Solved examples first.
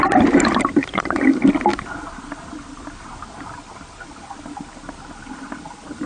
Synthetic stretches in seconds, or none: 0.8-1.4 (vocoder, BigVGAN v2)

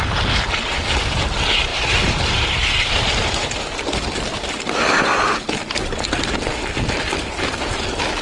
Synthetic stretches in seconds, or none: 1.7-3.5 (vocoder, BigVGAN v2)

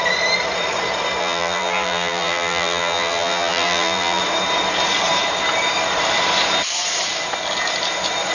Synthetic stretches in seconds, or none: 1.2-4.2 (vocoder, BigVGAN v2)

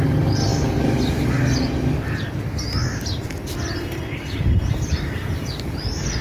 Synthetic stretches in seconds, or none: 2.8-6.2 (vocoder, BigVGAN v2)